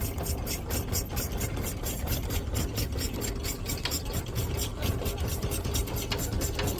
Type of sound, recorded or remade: recorded